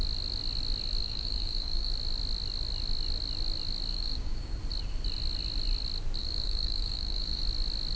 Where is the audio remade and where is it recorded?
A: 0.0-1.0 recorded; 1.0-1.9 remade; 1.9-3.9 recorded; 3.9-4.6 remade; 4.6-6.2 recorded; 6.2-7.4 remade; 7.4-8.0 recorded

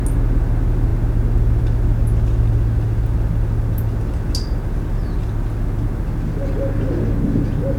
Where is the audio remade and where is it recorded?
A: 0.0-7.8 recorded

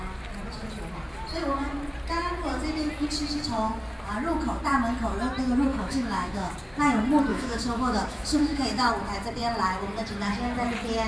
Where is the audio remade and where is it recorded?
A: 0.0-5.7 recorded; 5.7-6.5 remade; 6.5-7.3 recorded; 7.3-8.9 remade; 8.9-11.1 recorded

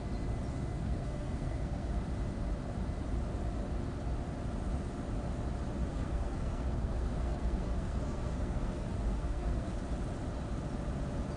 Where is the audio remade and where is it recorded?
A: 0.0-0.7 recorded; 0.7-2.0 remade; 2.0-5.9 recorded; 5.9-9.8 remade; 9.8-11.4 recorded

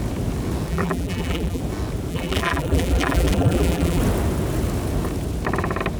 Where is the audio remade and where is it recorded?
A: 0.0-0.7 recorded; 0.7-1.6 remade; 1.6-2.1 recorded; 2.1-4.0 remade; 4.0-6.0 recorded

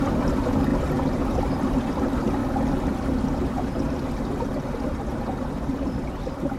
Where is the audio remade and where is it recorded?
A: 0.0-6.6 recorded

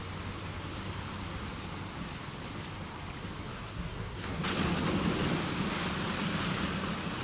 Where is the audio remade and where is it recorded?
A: 0.0-3.5 recorded; 3.5-4.4 remade; 4.4-7.2 recorded

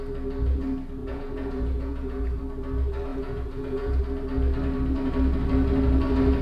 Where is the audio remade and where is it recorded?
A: 0.0-1.0 recorded; 1.0-2.4 remade; 2.4-3.1 recorded; 3.1-4.0 remade; 4.0-6.4 recorded